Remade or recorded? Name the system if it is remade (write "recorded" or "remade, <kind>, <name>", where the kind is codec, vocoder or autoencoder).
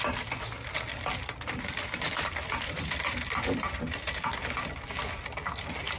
recorded